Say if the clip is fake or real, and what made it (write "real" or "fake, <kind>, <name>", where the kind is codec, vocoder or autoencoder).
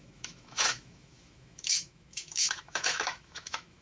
fake, autoencoder, DAC-VAE